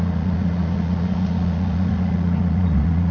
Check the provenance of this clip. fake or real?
fake